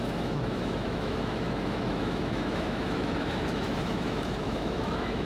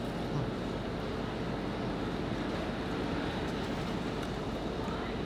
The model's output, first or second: first